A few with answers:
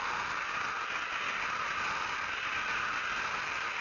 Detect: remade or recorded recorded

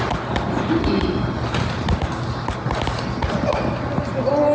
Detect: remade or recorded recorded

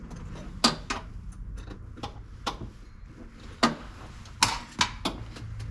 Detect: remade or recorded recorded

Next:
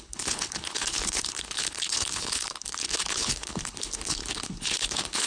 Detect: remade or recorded remade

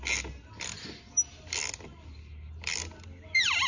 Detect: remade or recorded recorded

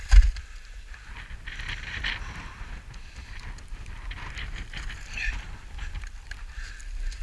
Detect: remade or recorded recorded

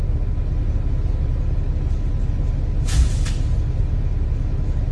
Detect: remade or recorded recorded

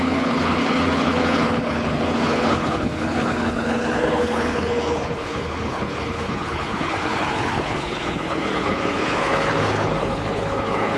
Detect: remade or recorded remade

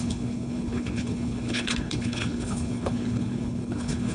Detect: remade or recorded remade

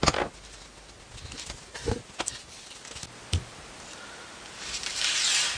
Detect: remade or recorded recorded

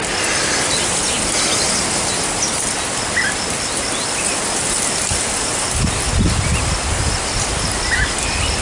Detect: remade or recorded recorded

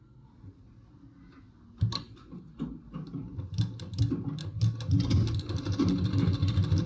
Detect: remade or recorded recorded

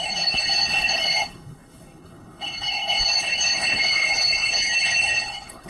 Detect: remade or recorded remade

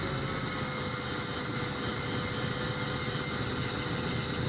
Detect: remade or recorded recorded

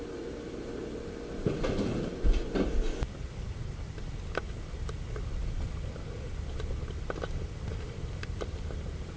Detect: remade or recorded recorded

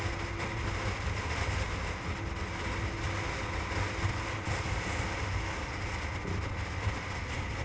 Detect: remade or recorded recorded